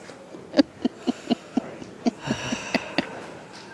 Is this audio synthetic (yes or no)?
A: no